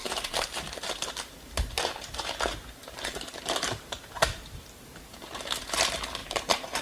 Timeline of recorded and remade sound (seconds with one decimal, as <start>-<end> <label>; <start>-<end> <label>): 0.0-4.1 remade; 4.1-6.2 recorded; 6.2-6.8 remade